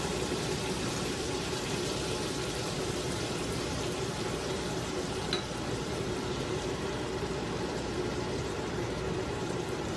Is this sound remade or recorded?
remade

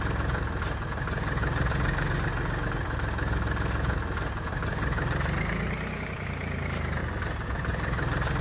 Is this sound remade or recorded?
recorded